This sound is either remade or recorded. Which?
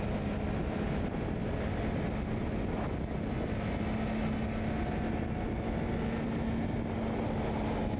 recorded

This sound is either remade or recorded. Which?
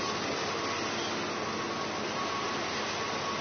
recorded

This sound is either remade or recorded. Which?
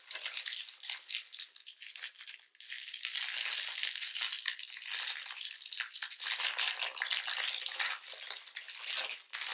recorded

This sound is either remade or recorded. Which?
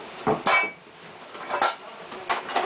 recorded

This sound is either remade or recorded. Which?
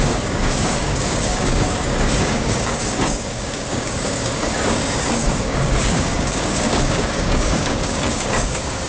remade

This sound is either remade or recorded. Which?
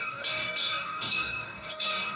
remade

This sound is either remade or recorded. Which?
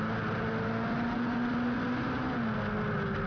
recorded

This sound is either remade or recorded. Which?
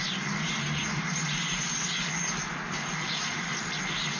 recorded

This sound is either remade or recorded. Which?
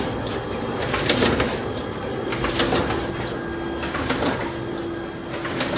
recorded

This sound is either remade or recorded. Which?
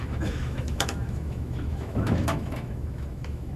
remade